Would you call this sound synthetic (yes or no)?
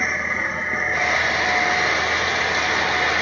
no